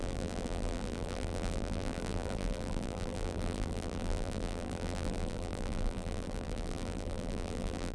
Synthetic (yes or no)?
yes